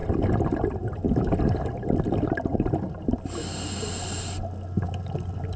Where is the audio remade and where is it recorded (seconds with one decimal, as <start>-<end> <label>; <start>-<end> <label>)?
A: 0.0-2.8 remade; 2.8-5.6 recorded